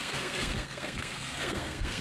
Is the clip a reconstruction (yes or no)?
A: yes